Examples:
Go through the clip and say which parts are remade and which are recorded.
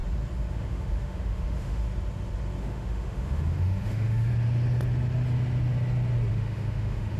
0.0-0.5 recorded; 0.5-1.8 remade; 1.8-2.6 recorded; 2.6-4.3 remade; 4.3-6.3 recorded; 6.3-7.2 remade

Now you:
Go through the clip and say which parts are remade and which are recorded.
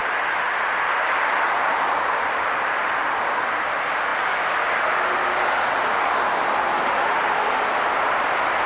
0.0-8.7 recorded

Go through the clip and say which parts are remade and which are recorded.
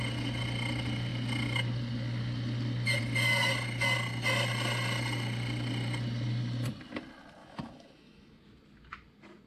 0.0-7.4 recorded; 7.4-8.4 remade; 8.4-9.5 recorded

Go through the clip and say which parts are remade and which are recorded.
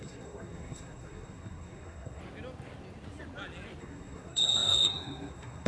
0.0-2.2 remade; 2.2-3.8 recorded; 3.8-5.7 remade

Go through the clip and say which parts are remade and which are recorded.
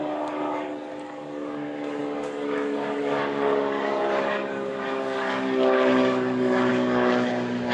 0.0-7.7 remade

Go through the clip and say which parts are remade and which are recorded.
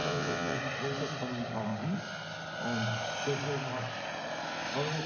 0.0-0.6 remade; 0.6-5.1 recorded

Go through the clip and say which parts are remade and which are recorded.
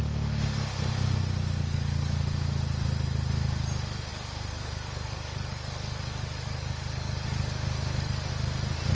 0.0-1.6 recorded; 1.6-2.2 remade; 2.2-4.1 recorded; 4.1-8.3 remade; 8.3-8.9 recorded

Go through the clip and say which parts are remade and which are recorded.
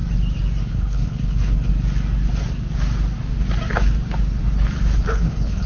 0.0-0.6 recorded; 0.6-1.7 remade; 1.7-5.1 recorded; 5.1-5.7 remade